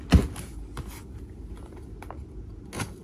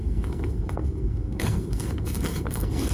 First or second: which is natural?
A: first